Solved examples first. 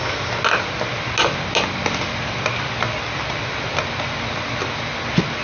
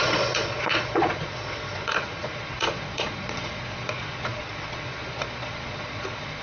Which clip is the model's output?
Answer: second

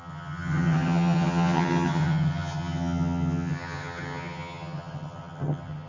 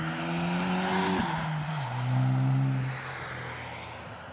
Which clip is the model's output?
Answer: first